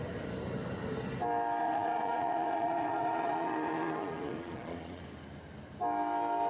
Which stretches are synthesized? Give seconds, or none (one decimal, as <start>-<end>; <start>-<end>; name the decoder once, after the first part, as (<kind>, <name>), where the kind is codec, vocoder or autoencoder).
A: 1.6-5.0 (vocoder, Vocos)